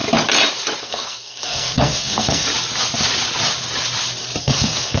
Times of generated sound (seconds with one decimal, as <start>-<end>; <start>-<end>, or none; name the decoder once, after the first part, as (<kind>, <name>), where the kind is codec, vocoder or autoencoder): 0.8-2.5 (codec, SNAC); 4.4-5.0